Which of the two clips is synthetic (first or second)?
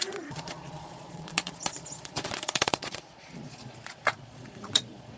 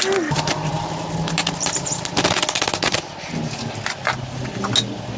first